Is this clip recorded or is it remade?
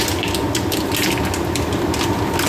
recorded